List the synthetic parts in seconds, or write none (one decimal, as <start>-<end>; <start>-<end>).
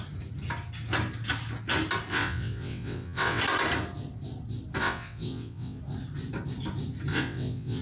2.1-3.4; 4.8-5.8; 7.1-7.8